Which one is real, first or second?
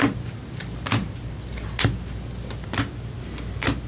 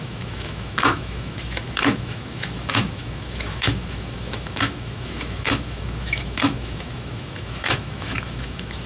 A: first